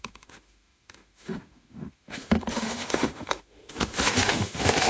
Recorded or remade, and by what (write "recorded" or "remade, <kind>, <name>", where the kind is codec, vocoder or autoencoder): remade, autoencoder, DAC-VAE